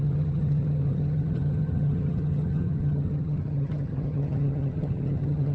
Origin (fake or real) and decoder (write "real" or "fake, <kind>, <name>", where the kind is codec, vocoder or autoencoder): fake, vocoder, HiFi-GAN